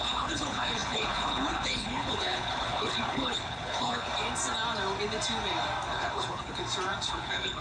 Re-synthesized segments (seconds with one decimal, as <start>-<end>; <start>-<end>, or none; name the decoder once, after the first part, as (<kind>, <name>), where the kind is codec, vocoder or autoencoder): 0.0-4.1 (codec, HILCodec); 5.9-6.6; 7.1-7.6